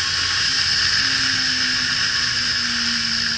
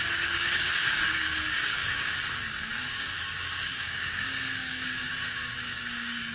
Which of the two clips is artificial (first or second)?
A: second